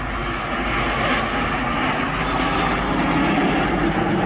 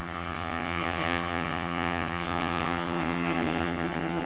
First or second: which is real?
first